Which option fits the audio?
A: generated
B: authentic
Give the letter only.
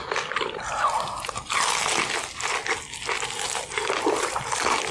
B